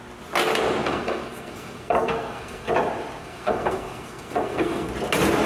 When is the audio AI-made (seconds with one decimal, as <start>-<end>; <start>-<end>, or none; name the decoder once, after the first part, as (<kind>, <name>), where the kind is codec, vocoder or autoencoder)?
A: 0.8-2.7 (codec, SNAC); 3.2-4.9